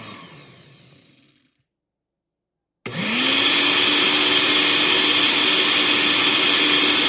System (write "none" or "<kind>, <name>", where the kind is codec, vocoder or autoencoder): none